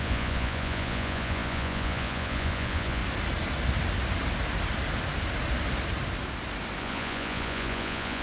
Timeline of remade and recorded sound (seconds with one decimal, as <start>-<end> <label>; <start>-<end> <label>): 0.0-3.0 remade; 3.0-6.8 recorded; 6.8-8.2 remade